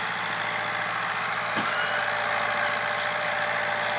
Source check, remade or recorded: recorded